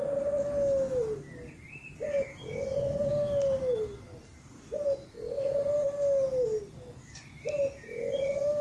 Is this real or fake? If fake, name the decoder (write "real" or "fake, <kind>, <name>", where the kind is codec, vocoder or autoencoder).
real